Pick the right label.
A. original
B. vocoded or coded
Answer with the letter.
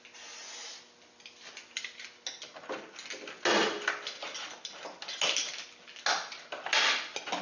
A